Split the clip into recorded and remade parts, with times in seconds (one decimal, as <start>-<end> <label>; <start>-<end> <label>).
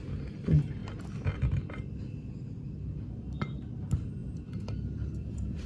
0.0-4.2 recorded; 4.2-5.7 remade